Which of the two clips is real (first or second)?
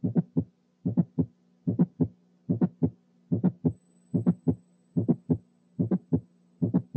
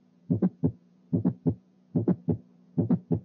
first